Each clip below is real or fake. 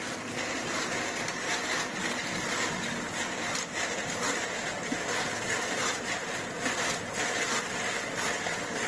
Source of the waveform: real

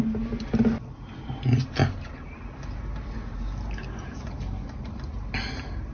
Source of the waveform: real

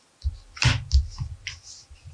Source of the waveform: real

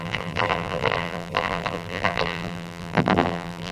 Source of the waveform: fake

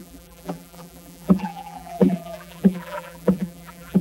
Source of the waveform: fake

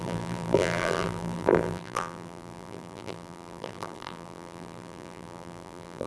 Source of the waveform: fake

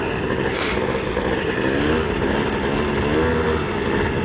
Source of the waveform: real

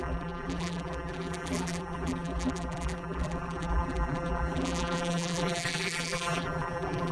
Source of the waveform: fake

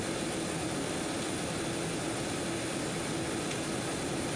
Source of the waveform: real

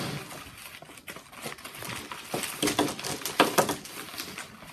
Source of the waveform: real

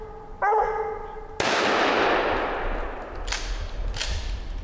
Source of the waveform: real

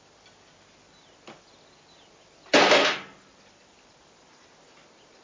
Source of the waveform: real